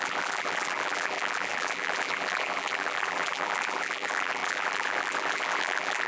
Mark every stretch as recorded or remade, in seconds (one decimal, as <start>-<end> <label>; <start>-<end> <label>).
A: 0.0-6.1 remade